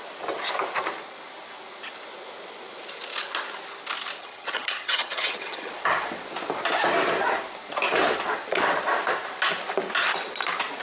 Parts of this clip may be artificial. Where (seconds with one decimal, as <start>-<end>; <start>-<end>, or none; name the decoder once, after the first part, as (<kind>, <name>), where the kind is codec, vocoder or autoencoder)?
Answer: 4.2-5.7 (vocoder, HiFi-GAN)